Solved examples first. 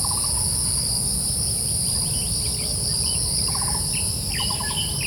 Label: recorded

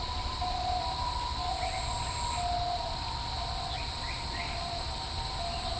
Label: recorded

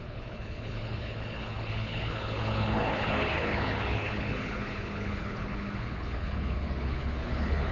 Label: remade